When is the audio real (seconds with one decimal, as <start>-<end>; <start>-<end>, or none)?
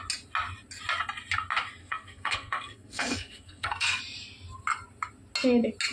0.0-1.8; 4.0-5.9